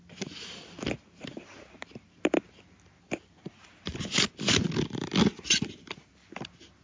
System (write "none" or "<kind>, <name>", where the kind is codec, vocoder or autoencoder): none